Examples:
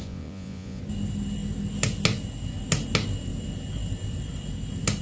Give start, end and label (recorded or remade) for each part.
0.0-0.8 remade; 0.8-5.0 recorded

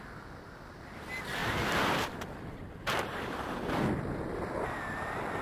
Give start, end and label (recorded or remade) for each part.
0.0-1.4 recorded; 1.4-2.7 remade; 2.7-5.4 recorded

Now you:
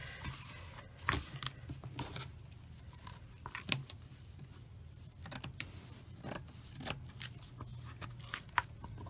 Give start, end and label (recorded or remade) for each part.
0.0-2.8 recorded; 2.8-7.7 remade; 7.7-8.2 recorded; 8.2-9.1 remade

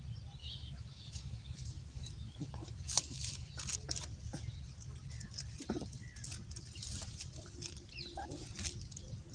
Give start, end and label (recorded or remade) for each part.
0.0-0.4 recorded; 0.4-3.5 remade; 3.5-9.3 recorded

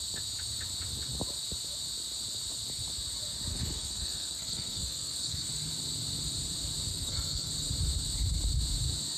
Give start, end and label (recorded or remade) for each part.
0.0-3.5 recorded; 3.5-5.5 remade; 5.5-6.9 recorded; 6.9-7.5 remade; 7.5-9.2 recorded

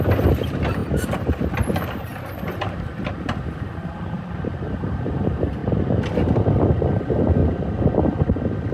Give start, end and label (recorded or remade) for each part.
0.0-5.6 remade; 5.6-6.9 recorded; 6.9-7.4 remade; 7.4-8.7 recorded

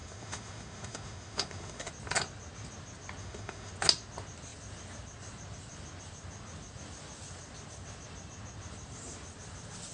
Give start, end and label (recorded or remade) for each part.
0.0-1.9 remade; 1.9-3.2 recorded; 3.2-3.7 remade; 3.7-9.9 recorded